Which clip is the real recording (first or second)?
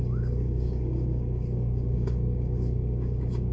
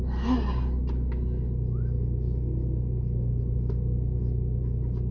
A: second